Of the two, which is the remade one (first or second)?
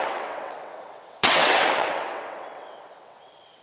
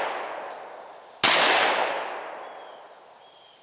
first